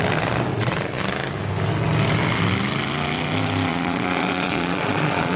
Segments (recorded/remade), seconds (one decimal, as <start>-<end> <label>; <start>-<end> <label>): 0.0-0.5 recorded; 0.5-1.0 remade; 1.0-3.7 recorded; 3.7-5.4 remade